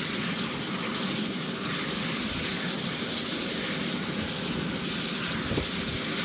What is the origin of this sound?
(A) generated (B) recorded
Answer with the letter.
B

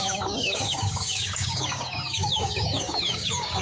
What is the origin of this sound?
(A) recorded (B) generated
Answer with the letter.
B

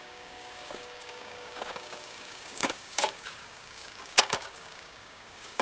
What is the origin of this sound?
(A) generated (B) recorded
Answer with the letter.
A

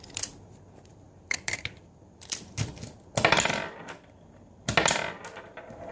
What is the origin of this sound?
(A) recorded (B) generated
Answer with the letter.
A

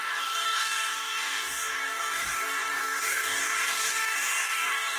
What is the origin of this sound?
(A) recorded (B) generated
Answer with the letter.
B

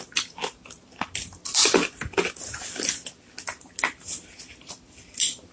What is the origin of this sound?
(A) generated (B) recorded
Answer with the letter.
B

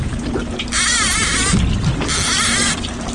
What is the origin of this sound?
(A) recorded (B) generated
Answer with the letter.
A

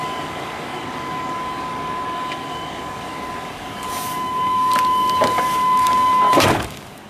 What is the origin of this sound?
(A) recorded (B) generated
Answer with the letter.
B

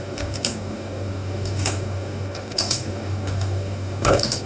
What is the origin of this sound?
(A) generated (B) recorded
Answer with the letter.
A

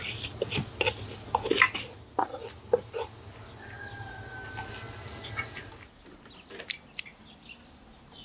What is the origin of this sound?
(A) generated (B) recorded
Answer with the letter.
B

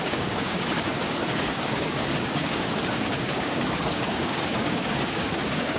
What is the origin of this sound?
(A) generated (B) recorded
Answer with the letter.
A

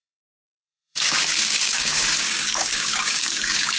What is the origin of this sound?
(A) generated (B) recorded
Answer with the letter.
A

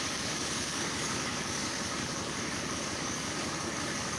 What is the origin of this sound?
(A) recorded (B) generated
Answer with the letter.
B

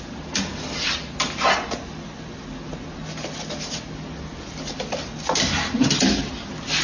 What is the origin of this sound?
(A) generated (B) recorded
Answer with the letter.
B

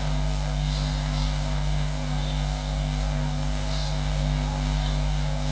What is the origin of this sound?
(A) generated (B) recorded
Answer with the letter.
A